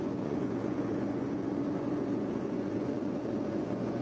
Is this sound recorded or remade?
remade